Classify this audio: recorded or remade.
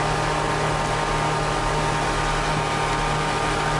recorded